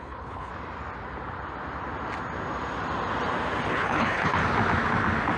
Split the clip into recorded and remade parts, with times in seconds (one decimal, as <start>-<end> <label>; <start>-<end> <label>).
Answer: 0.0-0.5 remade; 0.5-3.7 recorded; 3.7-4.4 remade; 4.4-5.4 recorded